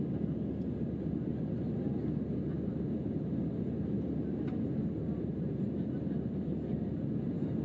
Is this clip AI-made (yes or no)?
no